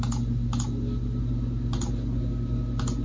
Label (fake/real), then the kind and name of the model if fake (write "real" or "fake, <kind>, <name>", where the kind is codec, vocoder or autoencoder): real